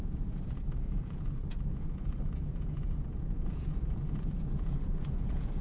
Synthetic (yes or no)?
yes